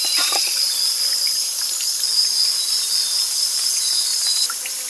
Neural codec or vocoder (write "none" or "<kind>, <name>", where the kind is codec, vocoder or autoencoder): none